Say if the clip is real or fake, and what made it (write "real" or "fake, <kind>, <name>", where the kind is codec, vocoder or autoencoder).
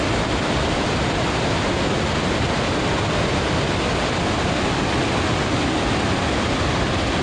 real